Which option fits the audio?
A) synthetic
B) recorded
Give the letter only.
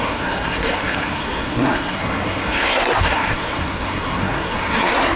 A